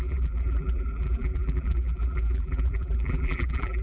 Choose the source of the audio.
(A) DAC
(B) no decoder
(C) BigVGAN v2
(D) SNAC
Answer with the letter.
C